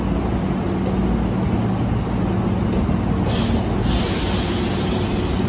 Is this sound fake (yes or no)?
no